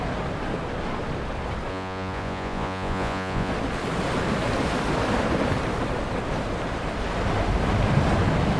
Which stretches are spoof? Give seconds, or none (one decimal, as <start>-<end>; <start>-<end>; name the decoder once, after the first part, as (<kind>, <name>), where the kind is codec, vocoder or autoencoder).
1.7-3.5 (vocoder, Vocos)